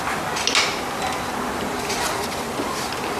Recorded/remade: recorded